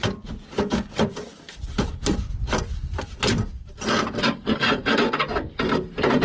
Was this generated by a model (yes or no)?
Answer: no